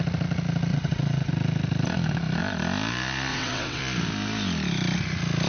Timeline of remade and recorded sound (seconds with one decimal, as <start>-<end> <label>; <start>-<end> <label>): 0.0-0.7 recorded; 0.7-1.3 remade; 1.3-3.3 recorded; 3.3-3.8 remade; 3.8-5.5 recorded